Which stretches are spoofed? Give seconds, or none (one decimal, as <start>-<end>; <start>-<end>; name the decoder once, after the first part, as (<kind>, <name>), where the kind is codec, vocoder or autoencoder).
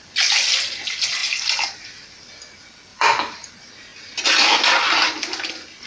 1.2-2.2 (vocoder, BigVGAN v2); 2.9-3.5